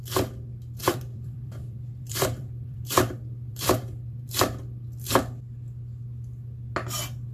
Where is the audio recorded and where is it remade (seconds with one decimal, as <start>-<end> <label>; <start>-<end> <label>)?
0.0-0.8 recorded; 0.8-4.3 remade; 4.3-7.3 recorded